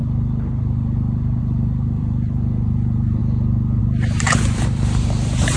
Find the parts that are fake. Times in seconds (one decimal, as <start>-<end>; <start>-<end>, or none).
1.4-3.2; 3.8-5.6